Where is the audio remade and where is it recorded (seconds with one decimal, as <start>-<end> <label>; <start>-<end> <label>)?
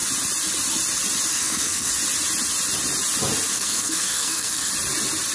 0.0-1.3 recorded; 1.3-1.9 remade; 1.9-3.5 recorded; 3.5-4.7 remade; 4.7-5.3 recorded